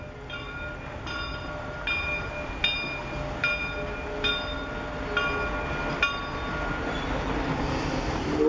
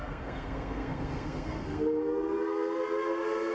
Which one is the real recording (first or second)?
first